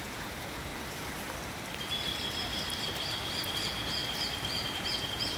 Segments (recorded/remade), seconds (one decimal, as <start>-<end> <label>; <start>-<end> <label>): 0.0-0.7 remade; 0.7-3.5 recorded; 3.5-4.0 remade; 4.0-4.7 recorded; 4.7-5.4 remade